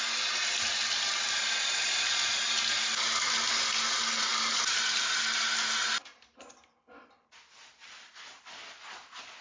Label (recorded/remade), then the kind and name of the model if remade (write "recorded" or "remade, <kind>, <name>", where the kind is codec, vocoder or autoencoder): recorded